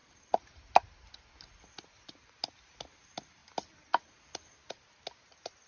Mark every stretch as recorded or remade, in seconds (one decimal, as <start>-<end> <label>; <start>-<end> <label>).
0.0-5.7 recorded